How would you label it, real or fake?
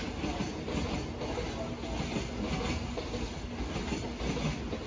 real